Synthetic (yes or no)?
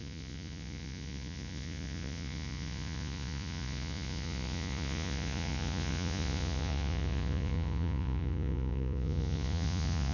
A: yes